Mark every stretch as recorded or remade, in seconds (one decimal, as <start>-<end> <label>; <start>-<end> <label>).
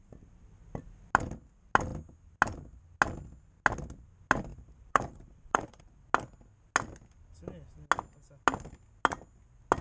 0.0-4.5 recorded; 4.5-5.8 remade; 5.8-9.8 recorded